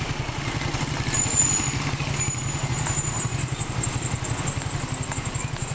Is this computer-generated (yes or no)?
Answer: no